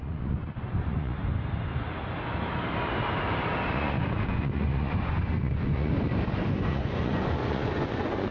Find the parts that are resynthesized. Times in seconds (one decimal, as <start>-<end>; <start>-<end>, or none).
0.0-1.2; 3.7-5.9; 6.5-8.3